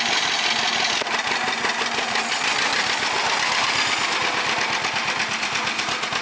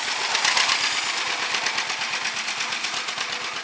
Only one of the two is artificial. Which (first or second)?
second